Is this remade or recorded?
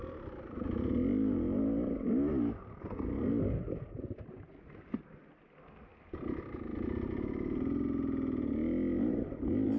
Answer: recorded